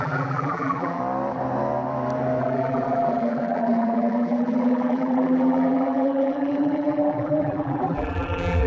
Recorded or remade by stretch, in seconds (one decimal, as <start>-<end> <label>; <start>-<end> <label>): 0.0-1.0 remade; 1.0-2.4 recorded; 2.4-8.7 remade